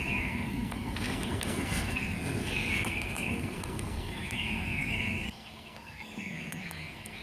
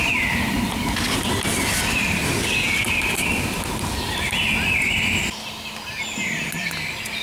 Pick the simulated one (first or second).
first